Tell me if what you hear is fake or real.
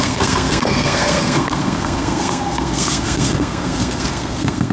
fake